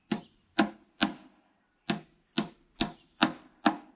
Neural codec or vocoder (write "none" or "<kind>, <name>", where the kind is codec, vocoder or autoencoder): none